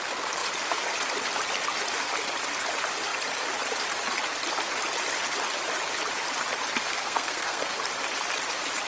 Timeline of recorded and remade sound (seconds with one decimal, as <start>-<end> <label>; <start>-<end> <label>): 0.0-6.8 recorded; 6.8-7.8 remade; 7.8-8.9 recorded